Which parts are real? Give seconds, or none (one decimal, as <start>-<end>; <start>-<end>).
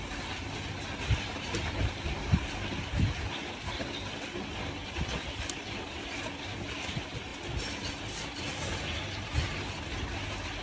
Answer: 0.0-10.6